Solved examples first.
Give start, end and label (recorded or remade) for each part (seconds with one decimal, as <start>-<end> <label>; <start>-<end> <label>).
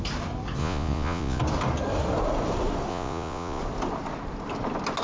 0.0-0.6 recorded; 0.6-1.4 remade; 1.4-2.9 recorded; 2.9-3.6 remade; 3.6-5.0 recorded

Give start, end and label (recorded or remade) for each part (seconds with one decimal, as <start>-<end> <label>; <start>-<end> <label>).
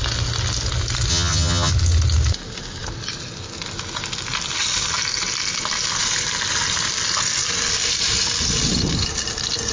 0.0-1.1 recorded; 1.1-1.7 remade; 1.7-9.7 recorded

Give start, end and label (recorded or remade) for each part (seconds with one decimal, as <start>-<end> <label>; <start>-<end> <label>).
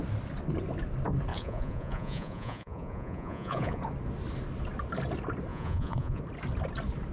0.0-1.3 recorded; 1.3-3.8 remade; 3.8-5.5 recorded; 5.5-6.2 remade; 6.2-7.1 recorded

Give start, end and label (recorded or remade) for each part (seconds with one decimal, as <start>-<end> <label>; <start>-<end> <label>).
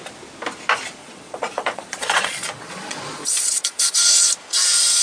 0.0-1.0 recorded; 1.0-4.0 remade; 4.0-5.0 recorded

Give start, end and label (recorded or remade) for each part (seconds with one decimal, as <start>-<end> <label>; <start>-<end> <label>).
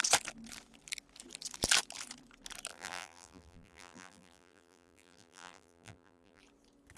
0.0-2.7 recorded; 2.7-6.4 remade; 6.4-7.0 recorded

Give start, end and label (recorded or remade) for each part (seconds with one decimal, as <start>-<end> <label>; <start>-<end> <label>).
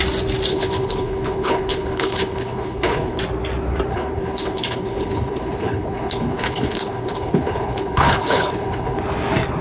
0.0-0.5 recorded; 0.5-3.2 remade; 3.2-3.9 recorded; 3.9-9.0 remade; 9.0-9.6 recorded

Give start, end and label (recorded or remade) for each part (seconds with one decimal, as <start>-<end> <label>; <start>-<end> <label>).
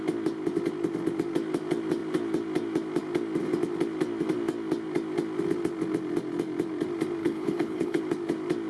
0.0-7.2 recorded; 7.2-8.0 remade; 8.0-8.7 recorded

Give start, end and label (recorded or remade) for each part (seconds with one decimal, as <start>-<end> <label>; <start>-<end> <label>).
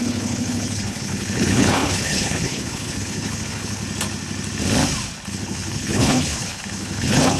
0.0-3.8 remade; 3.8-5.3 recorded; 5.3-7.4 remade